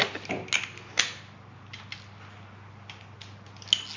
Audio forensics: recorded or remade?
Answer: recorded